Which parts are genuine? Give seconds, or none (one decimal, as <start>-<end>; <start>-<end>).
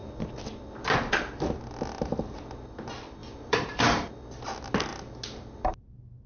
0.0-3.2; 4.1-6.3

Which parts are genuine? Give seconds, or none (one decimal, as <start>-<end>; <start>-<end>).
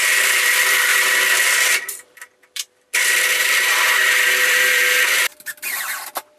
none